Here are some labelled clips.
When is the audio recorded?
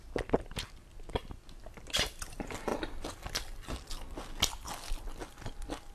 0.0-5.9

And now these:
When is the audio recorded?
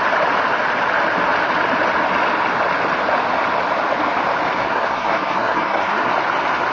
0.0-4.6; 6.1-6.7